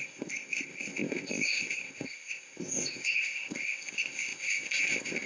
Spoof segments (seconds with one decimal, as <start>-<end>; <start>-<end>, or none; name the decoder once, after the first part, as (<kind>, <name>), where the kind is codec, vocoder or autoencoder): 0.0-5.3 (codec, ZipCodec)